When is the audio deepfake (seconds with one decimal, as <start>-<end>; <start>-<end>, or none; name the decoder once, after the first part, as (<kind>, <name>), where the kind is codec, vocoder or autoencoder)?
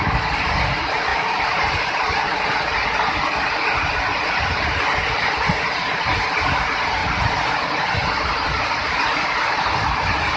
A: none